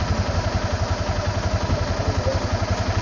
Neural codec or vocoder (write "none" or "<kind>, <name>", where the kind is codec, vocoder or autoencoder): none